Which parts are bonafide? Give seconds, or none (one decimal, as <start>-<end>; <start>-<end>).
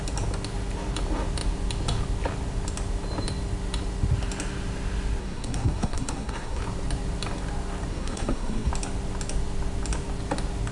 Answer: 0.0-5.2; 6.6-7.9; 8.7-10.7